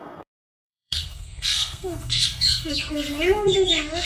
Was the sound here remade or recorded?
remade